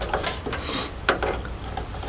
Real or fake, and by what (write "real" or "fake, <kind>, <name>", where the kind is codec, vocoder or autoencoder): real